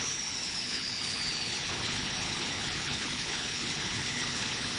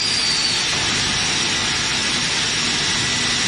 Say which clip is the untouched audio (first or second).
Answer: second